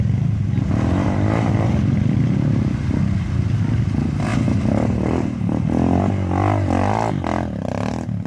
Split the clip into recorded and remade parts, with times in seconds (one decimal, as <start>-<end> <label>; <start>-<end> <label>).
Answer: 0.0-8.3 recorded